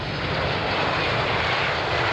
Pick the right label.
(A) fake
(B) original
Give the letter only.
B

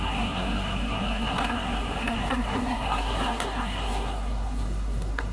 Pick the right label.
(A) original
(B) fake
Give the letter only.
B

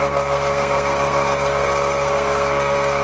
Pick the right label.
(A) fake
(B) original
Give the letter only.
A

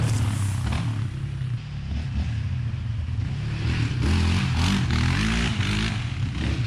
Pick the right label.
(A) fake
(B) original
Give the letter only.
B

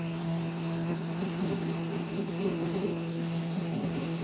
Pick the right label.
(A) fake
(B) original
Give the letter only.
A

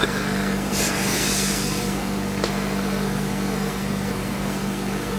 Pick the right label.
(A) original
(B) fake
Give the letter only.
B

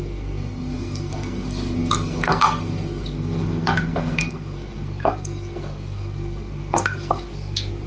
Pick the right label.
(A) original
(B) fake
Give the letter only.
B